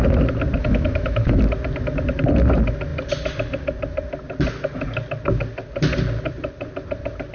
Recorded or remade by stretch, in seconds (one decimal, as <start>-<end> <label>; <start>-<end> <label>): 0.0-0.6 recorded; 0.6-1.4 remade; 1.4-7.3 recorded